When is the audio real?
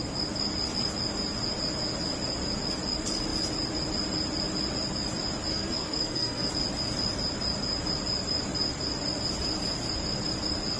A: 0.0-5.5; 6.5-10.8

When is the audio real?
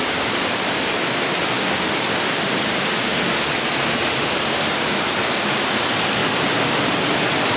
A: 0.0-7.6